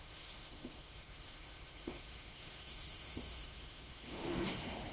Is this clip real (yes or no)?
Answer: no